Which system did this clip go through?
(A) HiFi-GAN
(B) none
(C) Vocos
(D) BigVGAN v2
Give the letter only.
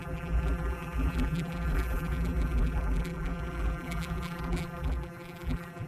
D